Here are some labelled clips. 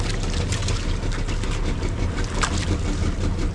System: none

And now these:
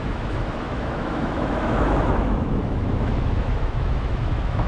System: autoencoder, DAC-VAE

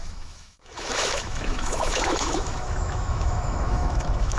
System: autoencoder, DAC-VAE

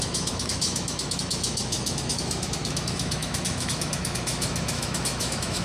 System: autoencoder, DAC-VAE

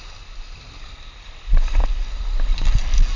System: none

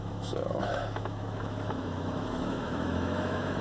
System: autoencoder, DAC-VAE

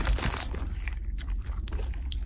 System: none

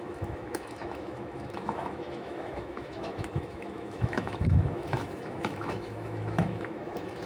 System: autoencoder, DAC-VAE